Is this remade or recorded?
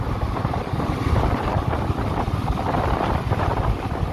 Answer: recorded